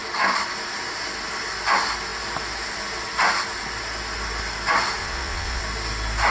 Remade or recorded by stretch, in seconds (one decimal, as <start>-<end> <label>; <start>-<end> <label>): 0.0-5.0 recorded; 5.0-5.6 remade; 5.6-6.3 recorded